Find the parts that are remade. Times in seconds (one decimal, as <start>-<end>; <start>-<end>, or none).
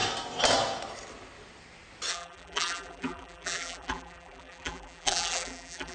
2.1-5.9